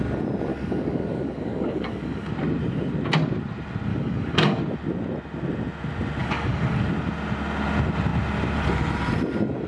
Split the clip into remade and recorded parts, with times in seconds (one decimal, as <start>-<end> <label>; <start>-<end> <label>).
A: 0.0-0.5 recorded; 0.5-2.3 remade; 2.3-3.9 recorded; 3.9-4.6 remade; 4.6-6.2 recorded; 6.2-6.9 remade; 6.9-9.7 recorded